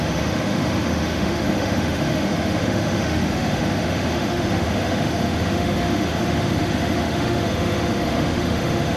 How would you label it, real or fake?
fake